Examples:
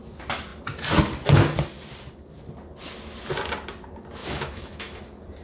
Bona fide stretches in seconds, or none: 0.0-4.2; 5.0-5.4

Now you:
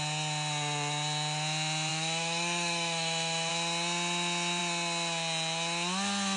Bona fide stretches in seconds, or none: 0.0-1.9; 3.5-6.4

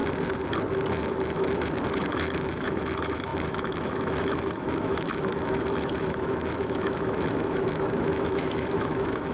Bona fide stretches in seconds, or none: 0.0-0.9

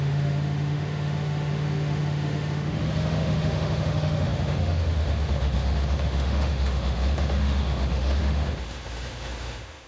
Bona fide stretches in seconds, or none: none